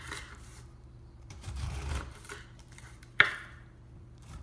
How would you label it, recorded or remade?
remade